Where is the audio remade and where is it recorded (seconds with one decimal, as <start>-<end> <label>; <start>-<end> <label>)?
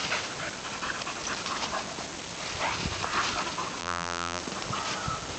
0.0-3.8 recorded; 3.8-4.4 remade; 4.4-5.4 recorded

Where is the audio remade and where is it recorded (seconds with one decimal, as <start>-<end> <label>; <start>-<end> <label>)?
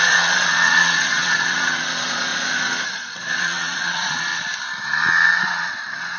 0.0-4.3 remade; 4.3-5.4 recorded; 5.4-6.2 remade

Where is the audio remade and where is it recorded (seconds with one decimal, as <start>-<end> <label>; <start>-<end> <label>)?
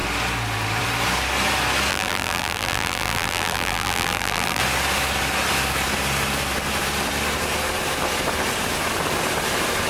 0.0-1.9 recorded; 1.9-4.6 remade; 4.6-9.9 recorded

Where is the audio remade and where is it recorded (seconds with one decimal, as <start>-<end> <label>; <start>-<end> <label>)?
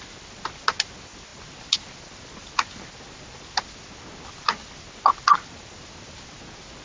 0.0-6.8 recorded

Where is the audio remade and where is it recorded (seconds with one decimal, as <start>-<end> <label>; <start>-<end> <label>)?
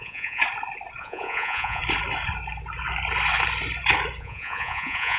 0.0-0.4 remade; 0.4-1.0 recorded; 1.0-1.8 remade; 1.8-4.2 recorded; 4.2-5.2 remade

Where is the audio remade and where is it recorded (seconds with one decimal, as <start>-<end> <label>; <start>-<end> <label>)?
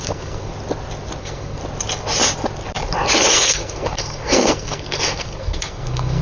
0.0-0.5 remade; 0.5-1.2 recorded; 1.2-1.6 remade; 1.6-3.3 recorded; 3.3-6.2 remade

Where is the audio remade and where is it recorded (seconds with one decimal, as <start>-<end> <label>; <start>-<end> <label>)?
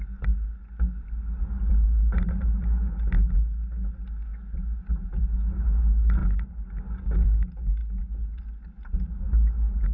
0.0-9.9 recorded